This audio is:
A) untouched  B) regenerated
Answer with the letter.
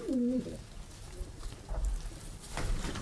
B